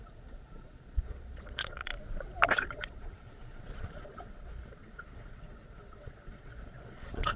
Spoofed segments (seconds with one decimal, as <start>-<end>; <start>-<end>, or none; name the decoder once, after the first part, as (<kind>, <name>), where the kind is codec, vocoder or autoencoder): 0.0-1.9 (vocoder, Vocos); 2.5-7.4